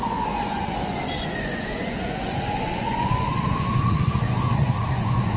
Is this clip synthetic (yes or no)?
yes